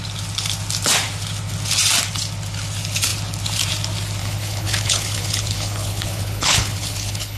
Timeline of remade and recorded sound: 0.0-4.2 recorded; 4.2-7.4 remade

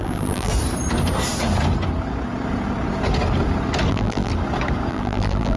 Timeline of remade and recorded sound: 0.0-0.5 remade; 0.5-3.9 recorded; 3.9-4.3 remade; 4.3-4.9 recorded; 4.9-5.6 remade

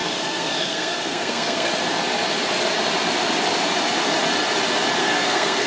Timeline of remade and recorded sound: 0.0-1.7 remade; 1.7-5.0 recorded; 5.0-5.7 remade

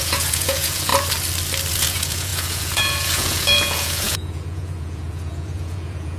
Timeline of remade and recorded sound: 0.0-0.9 remade; 0.9-1.7 recorded; 1.7-6.2 remade

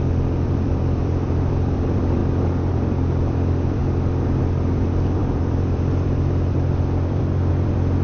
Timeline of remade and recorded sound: 0.0-2.2 remade; 2.2-2.7 recorded; 2.7-3.8 remade; 3.8-4.4 recorded; 4.4-8.0 remade